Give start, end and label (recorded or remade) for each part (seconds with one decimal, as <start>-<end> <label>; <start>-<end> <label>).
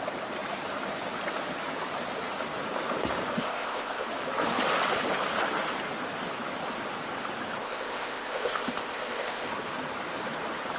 0.0-3.4 recorded; 3.4-4.1 remade; 4.1-7.6 recorded; 7.6-9.5 remade; 9.5-10.8 recorded